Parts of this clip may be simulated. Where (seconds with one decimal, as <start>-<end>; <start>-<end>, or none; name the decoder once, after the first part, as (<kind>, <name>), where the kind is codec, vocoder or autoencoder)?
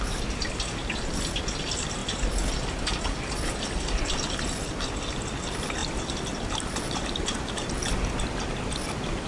none